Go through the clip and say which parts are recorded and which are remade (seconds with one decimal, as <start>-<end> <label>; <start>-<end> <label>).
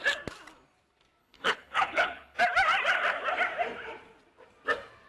0.0-1.2 recorded; 1.2-2.4 remade; 2.4-5.1 recorded